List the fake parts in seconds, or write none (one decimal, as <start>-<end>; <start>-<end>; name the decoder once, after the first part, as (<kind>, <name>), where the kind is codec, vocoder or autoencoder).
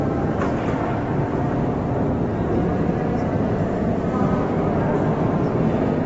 none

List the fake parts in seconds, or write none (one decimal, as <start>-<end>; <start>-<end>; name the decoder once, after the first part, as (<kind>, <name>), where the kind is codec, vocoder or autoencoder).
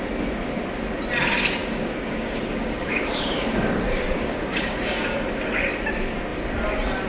1.6-5.2 (codec, DAC)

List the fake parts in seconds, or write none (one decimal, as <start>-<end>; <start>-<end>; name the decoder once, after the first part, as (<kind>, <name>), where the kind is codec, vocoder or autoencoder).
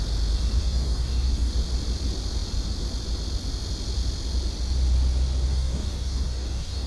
0.6-1.5 (codec, DAC); 5.5-6.9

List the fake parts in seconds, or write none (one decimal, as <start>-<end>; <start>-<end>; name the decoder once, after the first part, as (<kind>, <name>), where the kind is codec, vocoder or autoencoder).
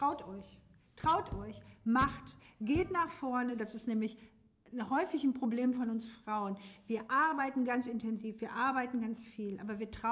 4.4-7.4 (codec, DAC)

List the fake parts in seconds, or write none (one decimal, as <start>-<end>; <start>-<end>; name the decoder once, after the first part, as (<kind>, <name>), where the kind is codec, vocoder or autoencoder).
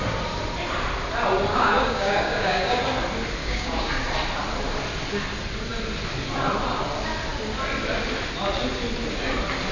1.5-2.8 (codec, DAC); 3.4-3.9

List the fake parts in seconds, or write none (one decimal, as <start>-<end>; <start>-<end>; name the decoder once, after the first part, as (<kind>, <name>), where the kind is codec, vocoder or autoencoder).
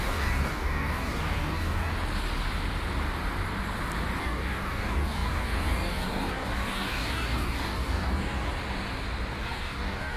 0.0-1.9 (codec, DAC); 4.2-8.5; 9.4-10.2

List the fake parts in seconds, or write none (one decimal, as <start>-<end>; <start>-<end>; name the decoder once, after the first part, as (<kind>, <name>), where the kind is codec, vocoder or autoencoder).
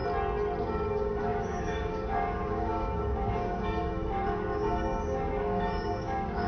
0.6-6.5 (codec, DAC)